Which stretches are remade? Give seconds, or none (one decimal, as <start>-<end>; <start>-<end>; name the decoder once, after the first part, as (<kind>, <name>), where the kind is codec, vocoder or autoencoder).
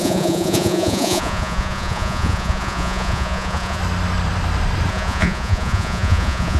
0.0-3.8 (vocoder, Vocos); 4.9-6.6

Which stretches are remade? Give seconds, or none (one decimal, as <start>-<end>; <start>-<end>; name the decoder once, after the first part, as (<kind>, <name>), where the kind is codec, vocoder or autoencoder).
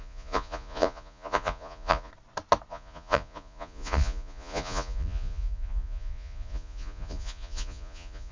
0.0-2.1 (vocoder, Vocos); 2.7-8.3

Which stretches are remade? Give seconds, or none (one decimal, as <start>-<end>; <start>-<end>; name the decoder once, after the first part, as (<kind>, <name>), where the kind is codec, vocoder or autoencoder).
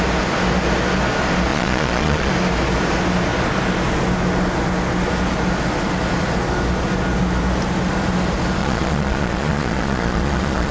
1.5-2.3 (vocoder, Vocos); 8.6-10.7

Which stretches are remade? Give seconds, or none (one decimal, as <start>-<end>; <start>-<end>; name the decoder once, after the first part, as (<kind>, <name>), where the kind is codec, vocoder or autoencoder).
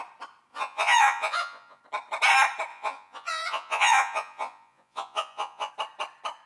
0.5-1.8 (vocoder, Vocos); 2.7-5.7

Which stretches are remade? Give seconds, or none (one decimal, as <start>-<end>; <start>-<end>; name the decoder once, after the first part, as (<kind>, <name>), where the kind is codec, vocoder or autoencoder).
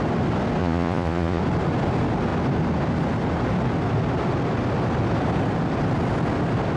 0.6-1.4 (vocoder, Vocos)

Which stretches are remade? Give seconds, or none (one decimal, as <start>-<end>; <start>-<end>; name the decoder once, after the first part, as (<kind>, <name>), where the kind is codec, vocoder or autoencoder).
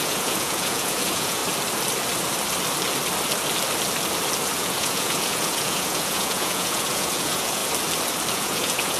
0.0-1.4 (vocoder, Vocos); 4.6-7.6; 8.3-9.0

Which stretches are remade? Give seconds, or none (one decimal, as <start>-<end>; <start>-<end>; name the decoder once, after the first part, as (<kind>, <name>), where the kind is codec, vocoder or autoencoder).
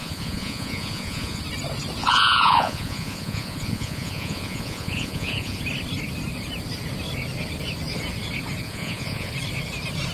0.0-1.4 (vocoder, Vocos); 2.0-5.6; 8.6-9.3